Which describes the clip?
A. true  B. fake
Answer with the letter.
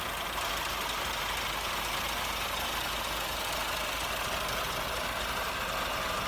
A